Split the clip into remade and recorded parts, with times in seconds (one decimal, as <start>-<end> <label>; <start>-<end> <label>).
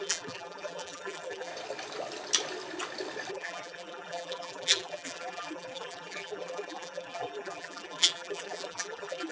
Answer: 0.0-1.5 remade; 1.5-3.3 recorded; 3.3-9.3 remade